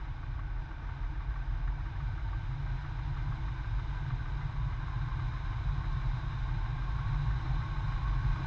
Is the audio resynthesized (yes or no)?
no